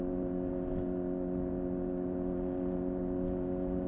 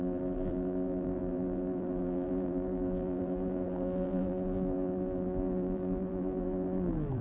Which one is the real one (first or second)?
first